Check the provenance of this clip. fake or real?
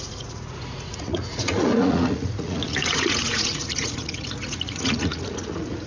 fake